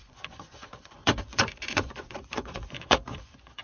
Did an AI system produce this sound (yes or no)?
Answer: yes